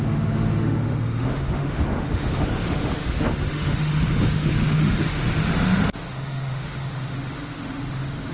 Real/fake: fake